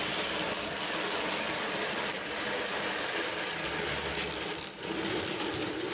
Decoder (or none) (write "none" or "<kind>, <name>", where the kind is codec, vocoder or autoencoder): none